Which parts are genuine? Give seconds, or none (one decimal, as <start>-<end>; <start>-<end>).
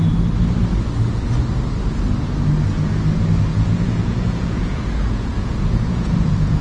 0.0-3.5